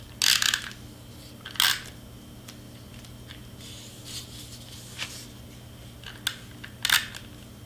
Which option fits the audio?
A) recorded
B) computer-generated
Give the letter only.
A